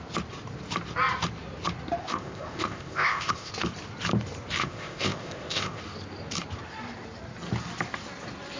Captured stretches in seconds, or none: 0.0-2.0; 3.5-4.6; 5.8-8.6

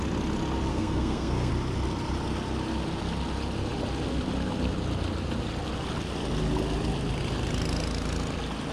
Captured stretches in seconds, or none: 0.0-0.7; 1.5-8.7